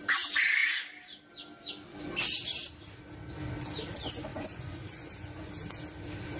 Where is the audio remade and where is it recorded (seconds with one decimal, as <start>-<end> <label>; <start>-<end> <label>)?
0.0-4.3 recorded; 4.3-5.5 remade; 5.5-6.4 recorded